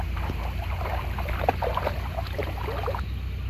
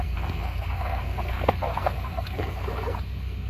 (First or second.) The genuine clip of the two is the first